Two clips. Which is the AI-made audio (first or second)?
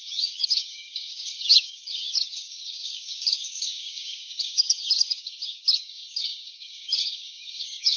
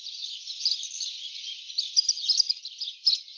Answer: first